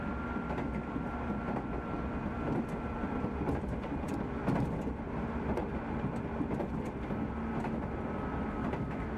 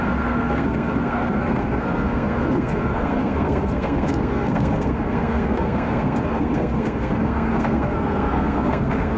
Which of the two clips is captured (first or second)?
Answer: first